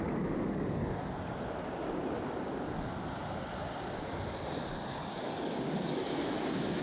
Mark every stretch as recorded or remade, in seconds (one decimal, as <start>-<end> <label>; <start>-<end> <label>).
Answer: 0.0-0.8 remade; 0.8-4.9 recorded; 4.9-6.0 remade; 6.0-6.8 recorded